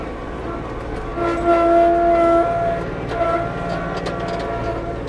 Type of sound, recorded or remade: recorded